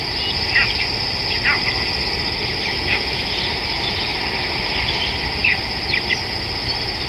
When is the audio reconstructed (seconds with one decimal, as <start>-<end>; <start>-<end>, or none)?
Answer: 2.7-3.3